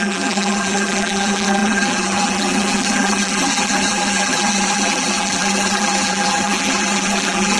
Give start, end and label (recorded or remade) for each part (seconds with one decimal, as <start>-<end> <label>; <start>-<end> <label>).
0.0-7.6 remade